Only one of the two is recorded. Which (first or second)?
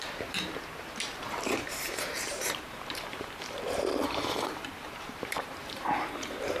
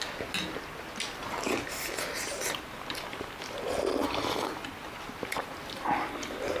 second